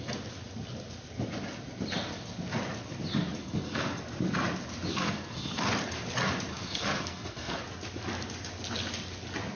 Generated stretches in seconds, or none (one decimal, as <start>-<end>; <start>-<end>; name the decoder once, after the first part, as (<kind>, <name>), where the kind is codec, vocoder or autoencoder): 3.4-4.0 (codec, SNAC); 4.9-5.7; 6.5-7.6